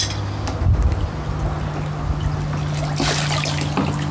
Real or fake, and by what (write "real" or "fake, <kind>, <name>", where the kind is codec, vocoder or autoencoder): real